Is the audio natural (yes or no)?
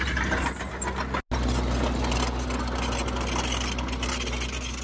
yes